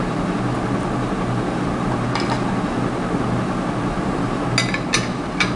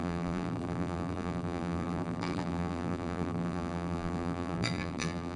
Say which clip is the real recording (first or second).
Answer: first